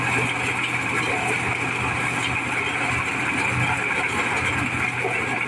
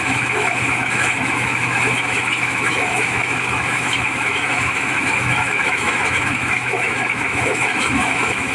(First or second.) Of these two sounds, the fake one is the second